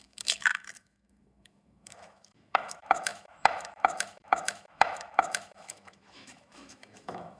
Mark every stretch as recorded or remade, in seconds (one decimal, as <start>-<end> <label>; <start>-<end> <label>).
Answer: 0.0-7.4 remade